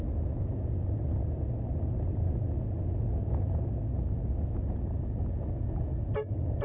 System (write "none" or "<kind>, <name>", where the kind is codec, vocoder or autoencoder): none